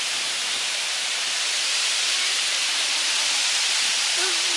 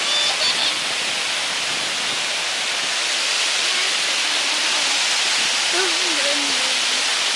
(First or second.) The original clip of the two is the second